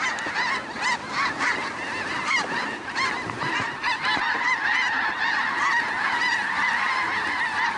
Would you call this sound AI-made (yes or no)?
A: yes